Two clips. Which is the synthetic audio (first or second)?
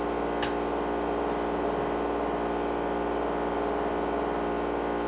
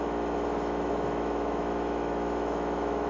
second